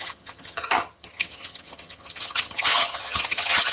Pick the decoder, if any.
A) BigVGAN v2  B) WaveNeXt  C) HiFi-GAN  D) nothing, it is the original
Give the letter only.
C